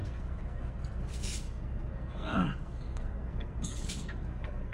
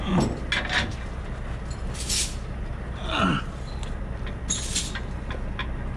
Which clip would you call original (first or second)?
second